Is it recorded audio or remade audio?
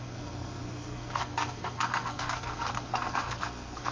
remade